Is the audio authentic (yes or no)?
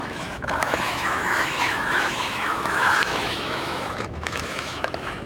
no